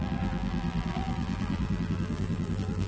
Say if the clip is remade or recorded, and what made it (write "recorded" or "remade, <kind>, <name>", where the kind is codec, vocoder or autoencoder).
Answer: remade, vocoder, BigVGAN v2